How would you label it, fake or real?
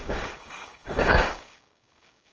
fake